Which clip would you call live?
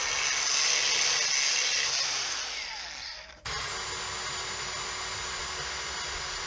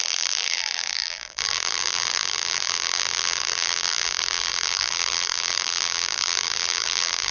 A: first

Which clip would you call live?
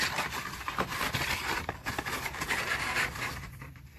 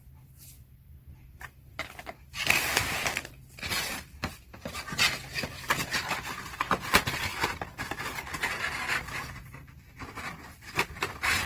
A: second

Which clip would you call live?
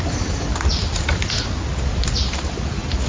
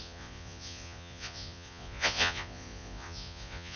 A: first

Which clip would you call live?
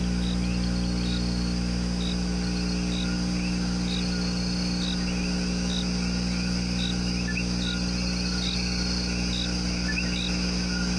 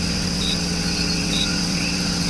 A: first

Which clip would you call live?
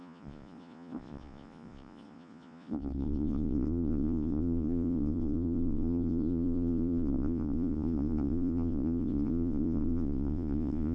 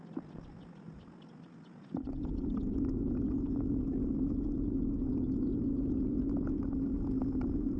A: second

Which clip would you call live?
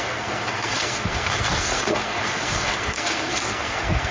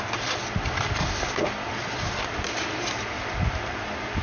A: second